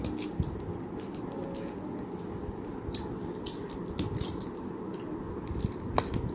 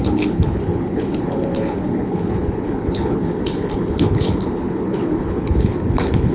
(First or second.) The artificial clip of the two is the second